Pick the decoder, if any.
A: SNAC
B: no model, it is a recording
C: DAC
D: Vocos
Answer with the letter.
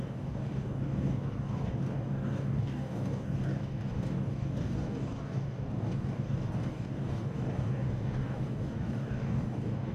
C